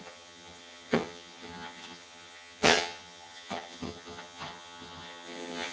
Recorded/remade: remade